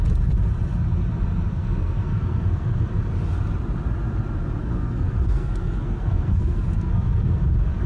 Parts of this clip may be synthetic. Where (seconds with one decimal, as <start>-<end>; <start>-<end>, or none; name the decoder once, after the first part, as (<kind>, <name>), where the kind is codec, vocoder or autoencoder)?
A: 1.5-2.8 (codec, SNAC); 4.6-7.4